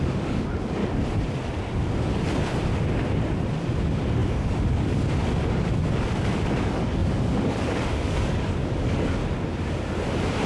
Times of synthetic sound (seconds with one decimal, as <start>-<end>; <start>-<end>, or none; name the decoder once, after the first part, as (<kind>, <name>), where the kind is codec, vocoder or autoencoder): 0.0-0.8 (codec, DAC); 3.7-9.2